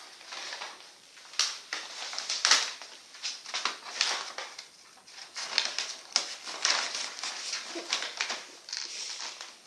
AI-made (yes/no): no